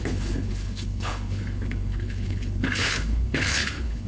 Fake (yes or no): yes